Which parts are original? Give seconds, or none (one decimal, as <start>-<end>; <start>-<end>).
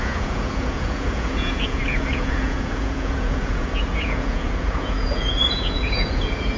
none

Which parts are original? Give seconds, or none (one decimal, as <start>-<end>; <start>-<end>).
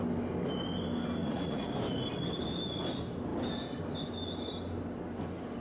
0.0-1.2; 1.7-5.6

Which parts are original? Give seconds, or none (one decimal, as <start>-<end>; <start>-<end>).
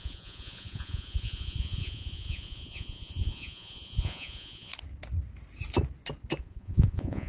4.7-6.4